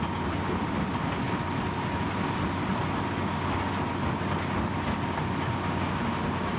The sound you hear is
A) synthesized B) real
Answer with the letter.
B